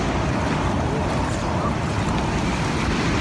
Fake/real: real